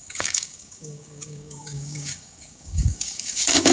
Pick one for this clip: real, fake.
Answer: fake